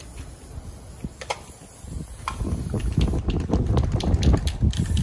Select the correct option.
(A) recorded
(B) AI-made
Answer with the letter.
A